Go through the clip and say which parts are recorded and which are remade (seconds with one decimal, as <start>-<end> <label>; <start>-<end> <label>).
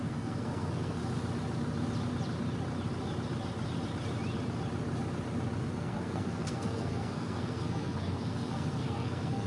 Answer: 0.0-1.0 remade; 1.0-5.6 recorded; 5.6-9.5 remade